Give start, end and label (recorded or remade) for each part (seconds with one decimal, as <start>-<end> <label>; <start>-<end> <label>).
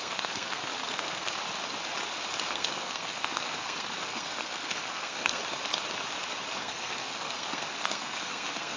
0.0-1.4 remade; 1.4-2.5 recorded; 2.5-5.4 remade; 5.4-6.6 recorded; 6.6-8.8 remade